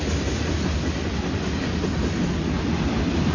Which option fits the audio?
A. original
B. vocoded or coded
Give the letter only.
A